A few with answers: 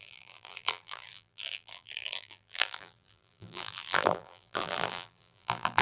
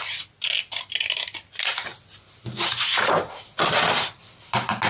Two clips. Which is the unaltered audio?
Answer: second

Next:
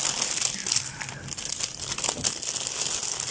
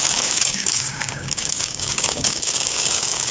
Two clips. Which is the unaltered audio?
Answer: first